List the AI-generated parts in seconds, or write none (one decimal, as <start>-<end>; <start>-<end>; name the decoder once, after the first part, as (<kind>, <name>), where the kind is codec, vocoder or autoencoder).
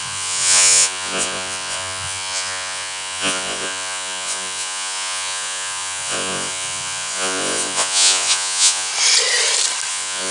0.0-8.9 (vocoder, Vocos); 9.9-10.3